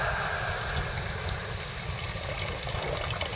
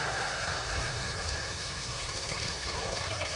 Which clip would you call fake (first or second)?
second